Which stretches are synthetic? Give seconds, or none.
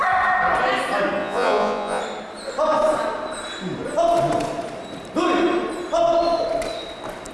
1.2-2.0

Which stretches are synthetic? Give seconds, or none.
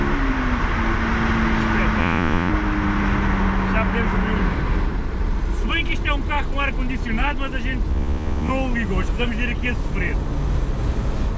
2.0-2.5; 7.9-8.5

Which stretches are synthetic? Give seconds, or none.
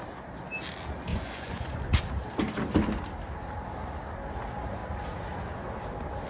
1.1-2.0